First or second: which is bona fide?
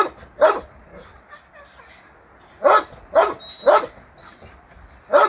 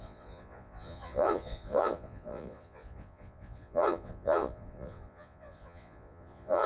first